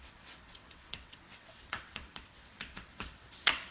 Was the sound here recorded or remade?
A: remade